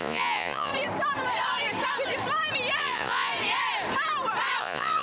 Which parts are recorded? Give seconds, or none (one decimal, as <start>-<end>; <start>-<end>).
0.7-2.8; 3.3-4.6